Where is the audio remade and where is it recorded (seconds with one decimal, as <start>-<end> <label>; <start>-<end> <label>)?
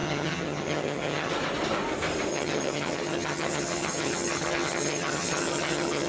0.0-1.3 remade; 1.3-2.3 recorded; 2.3-6.1 remade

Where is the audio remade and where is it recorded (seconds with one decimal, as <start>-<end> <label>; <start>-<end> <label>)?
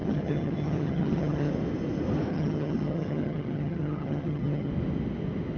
0.0-1.5 remade; 1.5-2.3 recorded; 2.3-4.7 remade; 4.7-5.6 recorded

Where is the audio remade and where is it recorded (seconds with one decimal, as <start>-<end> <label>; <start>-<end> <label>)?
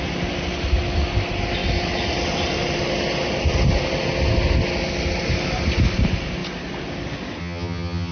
0.0-7.4 recorded; 7.4-8.1 remade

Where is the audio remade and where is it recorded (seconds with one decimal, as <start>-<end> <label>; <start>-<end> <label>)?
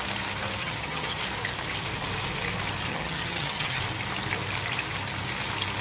0.0-0.6 recorded; 0.6-1.2 remade; 1.2-2.9 recorded; 2.9-3.8 remade; 3.8-5.8 recorded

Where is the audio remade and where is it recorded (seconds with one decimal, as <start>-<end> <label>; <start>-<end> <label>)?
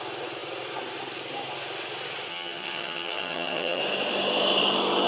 0.0-2.3 recorded; 2.3-3.8 remade; 3.8-5.1 recorded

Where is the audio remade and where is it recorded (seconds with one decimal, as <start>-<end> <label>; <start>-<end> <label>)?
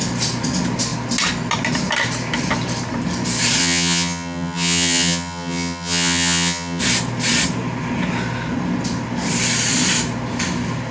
0.0-3.6 recorded; 3.6-6.8 remade; 6.8-10.9 recorded